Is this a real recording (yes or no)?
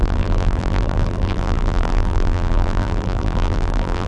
no